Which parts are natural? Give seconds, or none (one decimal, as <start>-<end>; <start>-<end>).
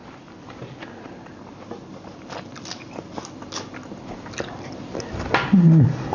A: 0.0-6.1